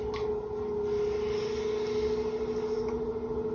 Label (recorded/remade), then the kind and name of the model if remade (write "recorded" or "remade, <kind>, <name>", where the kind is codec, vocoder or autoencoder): recorded